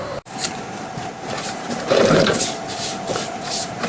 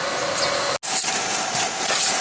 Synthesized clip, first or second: first